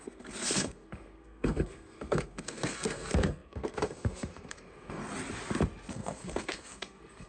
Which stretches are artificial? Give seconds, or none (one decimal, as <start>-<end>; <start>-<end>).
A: 0.0-5.0; 5.9-7.3